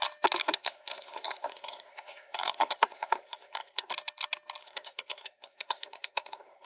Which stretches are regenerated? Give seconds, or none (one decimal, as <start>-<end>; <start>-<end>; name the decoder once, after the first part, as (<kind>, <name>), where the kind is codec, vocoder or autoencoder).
0.4-3.9 (codec, SNAC); 4.6-6.7